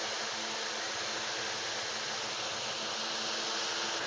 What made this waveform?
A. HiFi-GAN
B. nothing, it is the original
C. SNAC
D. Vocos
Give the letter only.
B